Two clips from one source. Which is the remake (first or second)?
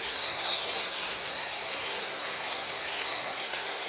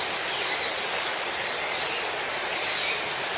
first